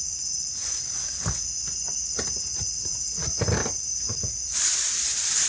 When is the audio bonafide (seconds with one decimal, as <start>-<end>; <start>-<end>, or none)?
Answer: 0.0-5.5